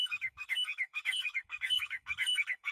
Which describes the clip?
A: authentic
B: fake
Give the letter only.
B